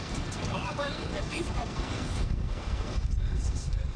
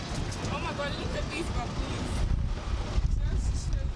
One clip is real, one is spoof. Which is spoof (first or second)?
first